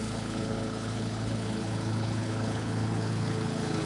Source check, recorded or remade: remade